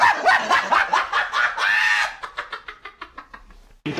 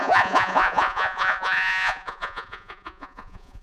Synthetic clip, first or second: second